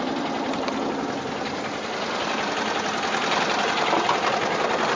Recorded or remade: recorded